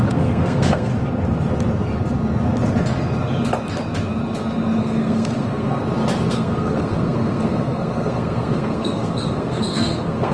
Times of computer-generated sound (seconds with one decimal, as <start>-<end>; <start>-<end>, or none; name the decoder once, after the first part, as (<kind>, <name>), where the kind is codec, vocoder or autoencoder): 0.0-0.9 (codec, SNAC); 4.8-5.8; 6.3-10.3